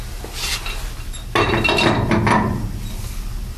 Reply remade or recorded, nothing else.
recorded